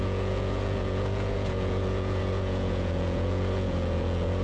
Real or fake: fake